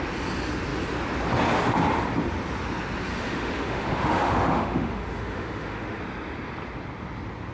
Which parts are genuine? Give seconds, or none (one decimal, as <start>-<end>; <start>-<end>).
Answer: 0.0-3.1; 6.0-7.5